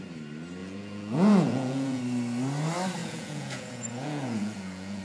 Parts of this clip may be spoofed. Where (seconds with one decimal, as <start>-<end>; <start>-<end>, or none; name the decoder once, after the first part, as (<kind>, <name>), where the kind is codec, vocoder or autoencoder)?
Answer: 0.6-2.0 (vocoder, Vocos); 3.0-5.0

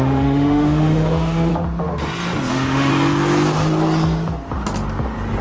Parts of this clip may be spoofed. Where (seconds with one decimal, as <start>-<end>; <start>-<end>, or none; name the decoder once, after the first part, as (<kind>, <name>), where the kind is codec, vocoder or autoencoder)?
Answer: 0.0-1.5 (autoencoder, DAC-VAE); 2.5-2.9